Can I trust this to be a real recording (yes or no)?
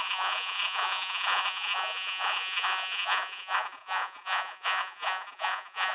no